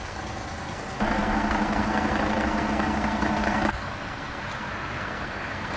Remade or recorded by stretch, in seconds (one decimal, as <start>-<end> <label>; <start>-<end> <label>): 0.0-5.8 remade